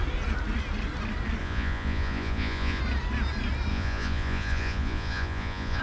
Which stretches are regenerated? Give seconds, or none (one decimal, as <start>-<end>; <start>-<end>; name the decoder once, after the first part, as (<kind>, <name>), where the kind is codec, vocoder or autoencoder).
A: 1.4-2.8 (vocoder, Vocos); 3.7-5.8

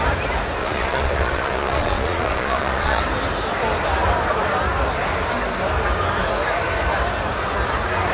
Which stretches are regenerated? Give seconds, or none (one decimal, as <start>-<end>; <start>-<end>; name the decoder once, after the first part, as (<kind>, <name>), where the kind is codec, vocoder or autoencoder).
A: 0.6-3.0 (vocoder, Vocos)